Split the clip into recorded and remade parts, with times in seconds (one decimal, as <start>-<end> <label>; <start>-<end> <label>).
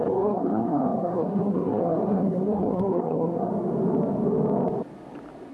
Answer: 0.0-3.5 remade; 3.5-5.5 recorded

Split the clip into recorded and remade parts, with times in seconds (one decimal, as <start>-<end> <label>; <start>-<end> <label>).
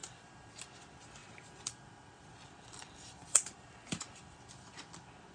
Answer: 0.0-0.6 remade; 0.6-1.2 recorded; 1.2-4.4 remade; 4.4-5.3 recorded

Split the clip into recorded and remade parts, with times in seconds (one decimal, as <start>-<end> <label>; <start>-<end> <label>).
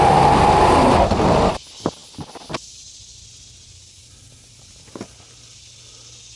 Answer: 0.0-6.4 recorded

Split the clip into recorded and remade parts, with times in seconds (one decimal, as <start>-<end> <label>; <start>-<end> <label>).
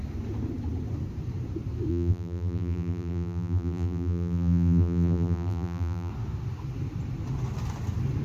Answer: 0.0-1.9 recorded; 1.9-6.1 remade; 6.1-8.2 recorded